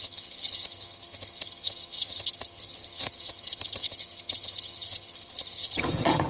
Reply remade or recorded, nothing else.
remade